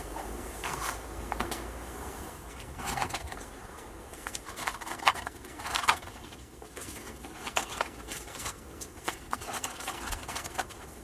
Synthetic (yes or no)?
yes